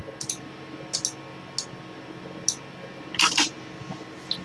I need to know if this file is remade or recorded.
recorded